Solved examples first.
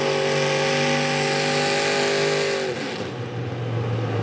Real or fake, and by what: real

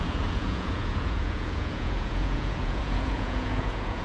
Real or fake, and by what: fake, vocoder, Vocos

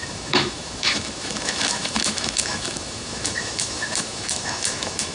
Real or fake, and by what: fake, autoencoder, DAC-VAE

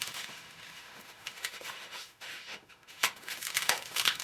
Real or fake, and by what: fake, autoencoder, DAC-VAE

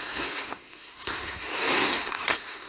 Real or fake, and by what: fake, codec, SNAC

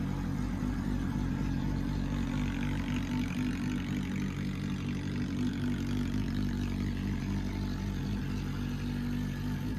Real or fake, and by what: real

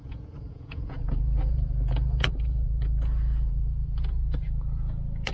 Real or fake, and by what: fake, vocoder, Vocos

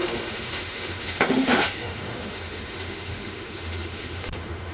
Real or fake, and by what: fake, autoencoder, DAC-VAE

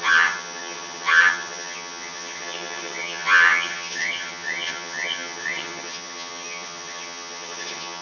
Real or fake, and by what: fake, vocoder, HiFi-GAN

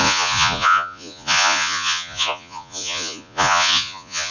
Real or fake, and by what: fake, vocoder, Vocos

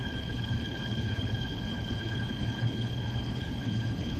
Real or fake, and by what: fake, codec, HILCodec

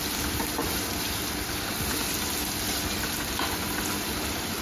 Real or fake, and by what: real